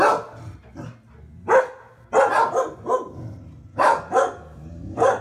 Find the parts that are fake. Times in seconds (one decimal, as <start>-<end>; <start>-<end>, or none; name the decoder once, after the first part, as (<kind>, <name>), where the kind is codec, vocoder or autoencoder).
3.7-5.2 (codec, DAC)

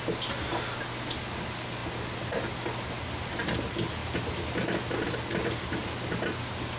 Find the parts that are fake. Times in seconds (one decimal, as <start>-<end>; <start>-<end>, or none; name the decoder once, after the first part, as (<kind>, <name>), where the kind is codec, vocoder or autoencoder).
none